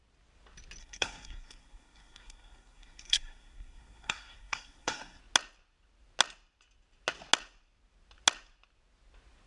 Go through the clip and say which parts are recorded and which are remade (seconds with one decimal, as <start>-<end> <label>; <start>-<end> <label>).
0.0-0.8 recorded; 0.8-5.2 remade; 5.2-9.5 recorded

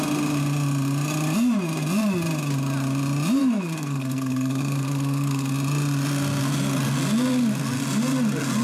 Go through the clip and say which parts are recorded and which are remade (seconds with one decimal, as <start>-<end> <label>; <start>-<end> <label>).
0.0-3.4 recorded; 3.4-5.5 remade; 5.5-8.6 recorded

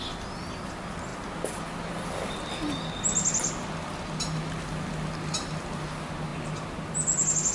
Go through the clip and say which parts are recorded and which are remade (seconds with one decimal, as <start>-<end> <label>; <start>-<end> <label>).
0.0-7.5 recorded

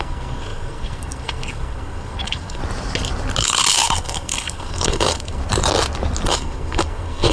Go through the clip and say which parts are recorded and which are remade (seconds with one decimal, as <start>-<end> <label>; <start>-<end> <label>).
0.0-2.6 remade; 2.6-3.4 recorded; 3.4-5.4 remade; 5.4-6.3 recorded; 6.3-7.3 remade

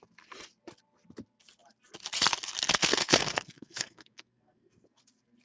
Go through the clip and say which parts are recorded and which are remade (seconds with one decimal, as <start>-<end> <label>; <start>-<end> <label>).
0.0-2.8 recorded; 2.8-5.0 remade; 5.0-5.4 recorded